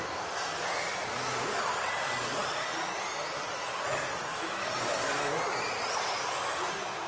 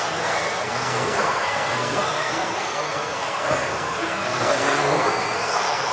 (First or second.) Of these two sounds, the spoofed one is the second